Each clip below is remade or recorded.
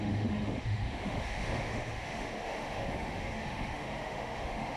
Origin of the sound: remade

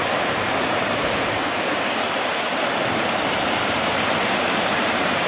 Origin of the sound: remade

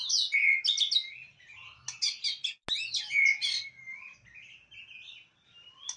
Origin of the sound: recorded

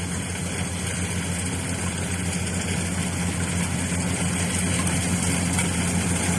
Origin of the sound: recorded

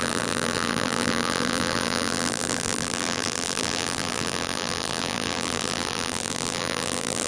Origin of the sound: remade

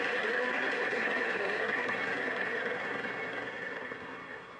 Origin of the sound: remade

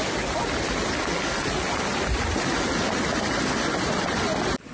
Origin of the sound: recorded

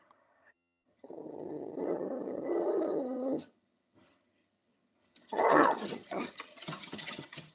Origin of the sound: remade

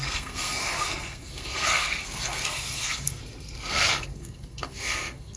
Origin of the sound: remade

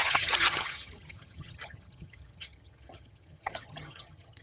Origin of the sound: remade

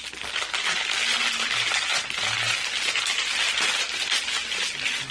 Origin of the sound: recorded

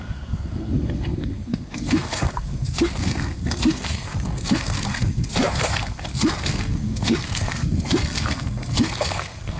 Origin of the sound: remade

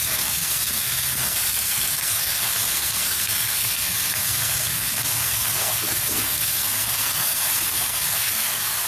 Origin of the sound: remade